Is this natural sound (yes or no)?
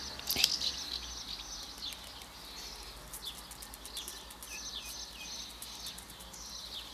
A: yes